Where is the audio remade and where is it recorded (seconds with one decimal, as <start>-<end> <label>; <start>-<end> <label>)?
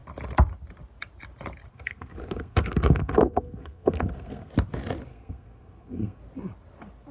0.0-1.7 recorded; 1.7-4.5 remade; 4.5-5.1 recorded; 5.1-6.2 remade; 6.2-7.1 recorded